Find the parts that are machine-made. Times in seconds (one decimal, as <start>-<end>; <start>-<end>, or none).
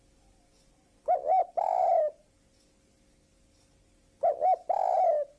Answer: 1.4-2.3